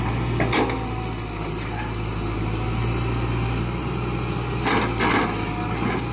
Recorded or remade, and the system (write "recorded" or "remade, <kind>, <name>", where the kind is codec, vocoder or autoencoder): recorded